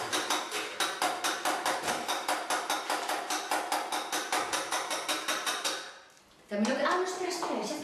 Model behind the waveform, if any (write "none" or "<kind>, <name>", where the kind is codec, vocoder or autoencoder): none